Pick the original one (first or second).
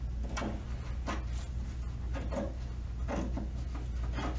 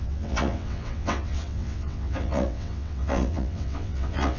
first